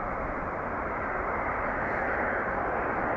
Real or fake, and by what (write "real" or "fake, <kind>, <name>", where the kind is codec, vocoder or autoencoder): real